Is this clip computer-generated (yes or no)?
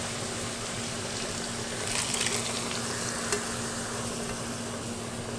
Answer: no